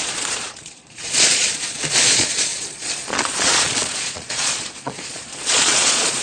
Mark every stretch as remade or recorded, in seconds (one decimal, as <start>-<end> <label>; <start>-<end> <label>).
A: 0.0-6.2 remade